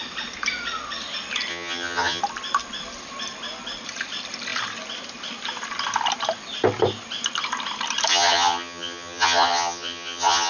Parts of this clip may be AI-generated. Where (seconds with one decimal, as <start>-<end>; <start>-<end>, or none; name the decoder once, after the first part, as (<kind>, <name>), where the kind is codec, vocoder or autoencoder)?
1.5-2.2 (vocoder, HiFi-GAN); 8.1-10.5

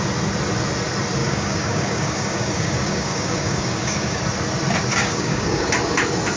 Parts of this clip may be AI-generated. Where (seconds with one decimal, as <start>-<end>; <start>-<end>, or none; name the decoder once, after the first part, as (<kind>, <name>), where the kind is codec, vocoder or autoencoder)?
1.2-4.2 (codec, DAC); 4.9-5.7

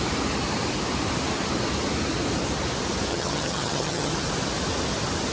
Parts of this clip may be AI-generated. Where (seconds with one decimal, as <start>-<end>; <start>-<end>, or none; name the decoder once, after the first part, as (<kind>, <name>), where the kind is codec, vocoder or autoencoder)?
3.1-4.1 (vocoder, HiFi-GAN)

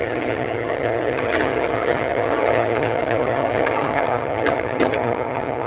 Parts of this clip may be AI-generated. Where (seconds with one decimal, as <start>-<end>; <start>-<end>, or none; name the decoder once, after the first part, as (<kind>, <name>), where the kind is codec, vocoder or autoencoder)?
0.0-5.7 (vocoder, HiFi-GAN)